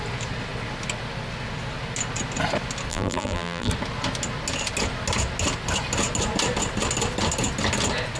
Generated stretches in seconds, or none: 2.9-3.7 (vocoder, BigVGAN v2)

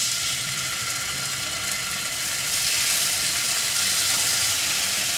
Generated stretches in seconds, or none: 0.0-5.2 (vocoder, BigVGAN v2)

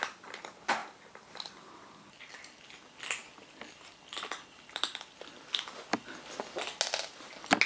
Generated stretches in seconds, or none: none